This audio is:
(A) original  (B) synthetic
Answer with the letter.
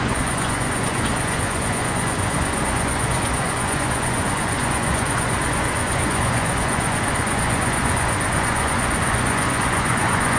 B